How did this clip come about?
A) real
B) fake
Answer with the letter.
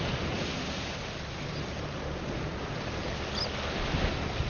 A